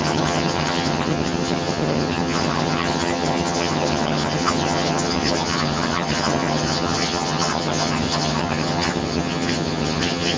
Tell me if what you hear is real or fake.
fake